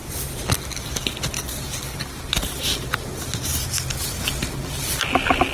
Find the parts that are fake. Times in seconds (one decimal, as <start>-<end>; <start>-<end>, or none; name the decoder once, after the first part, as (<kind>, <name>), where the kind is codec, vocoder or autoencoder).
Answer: none